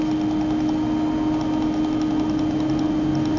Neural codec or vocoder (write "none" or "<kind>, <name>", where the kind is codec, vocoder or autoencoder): none